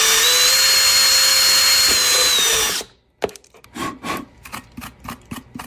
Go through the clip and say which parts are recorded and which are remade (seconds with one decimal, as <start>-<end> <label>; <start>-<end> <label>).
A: 0.0-5.7 recorded